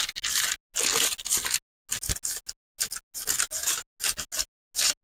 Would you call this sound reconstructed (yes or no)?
no